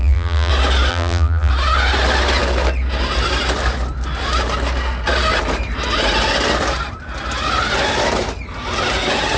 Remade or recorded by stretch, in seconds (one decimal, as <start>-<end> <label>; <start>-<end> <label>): 0.0-0.5 remade; 0.5-0.9 recorded; 0.9-1.5 remade; 1.5-9.4 recorded

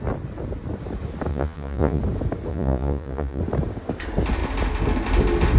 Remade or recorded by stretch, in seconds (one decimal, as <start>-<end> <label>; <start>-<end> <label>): 0.0-1.3 recorded; 1.3-2.0 remade; 2.0-2.5 recorded; 2.5-3.4 remade; 3.4-5.6 recorded